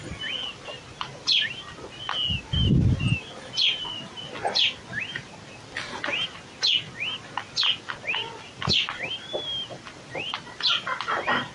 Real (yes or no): yes